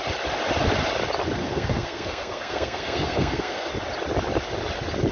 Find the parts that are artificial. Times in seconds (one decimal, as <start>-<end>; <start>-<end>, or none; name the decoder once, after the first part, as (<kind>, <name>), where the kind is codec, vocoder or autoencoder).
1.4-3.7 (codec, SNAC)